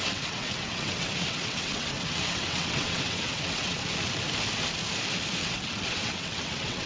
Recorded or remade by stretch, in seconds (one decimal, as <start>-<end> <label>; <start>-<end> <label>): 0.0-3.8 remade; 3.8-5.4 recorded; 5.4-6.9 remade